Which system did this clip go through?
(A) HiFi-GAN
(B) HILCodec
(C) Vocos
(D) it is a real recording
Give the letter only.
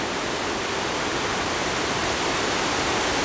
D